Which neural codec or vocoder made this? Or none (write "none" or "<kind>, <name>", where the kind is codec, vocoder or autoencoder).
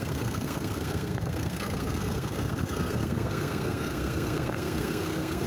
codec, SNAC